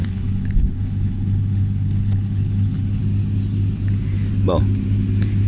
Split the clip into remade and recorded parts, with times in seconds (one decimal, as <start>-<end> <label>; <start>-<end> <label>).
0.0-3.0 remade; 3.0-5.5 recorded